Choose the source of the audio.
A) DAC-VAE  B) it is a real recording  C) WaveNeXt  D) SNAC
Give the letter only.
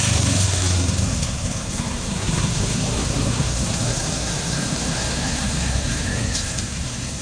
D